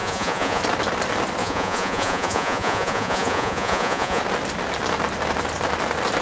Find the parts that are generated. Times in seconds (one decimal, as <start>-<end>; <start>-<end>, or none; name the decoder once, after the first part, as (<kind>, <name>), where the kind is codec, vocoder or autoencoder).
0.0-0.6 (vocoder, Vocos); 1.4-4.2